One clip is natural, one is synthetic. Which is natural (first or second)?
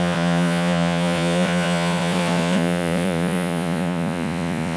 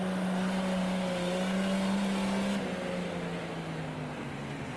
second